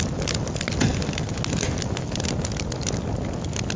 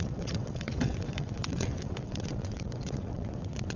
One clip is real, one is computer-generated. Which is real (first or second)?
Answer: first